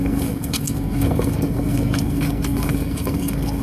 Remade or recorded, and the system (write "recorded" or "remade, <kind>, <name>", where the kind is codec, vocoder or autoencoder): remade, codec, SNAC